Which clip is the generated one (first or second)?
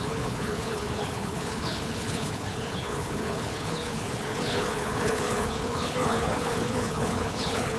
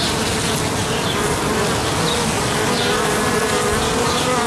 first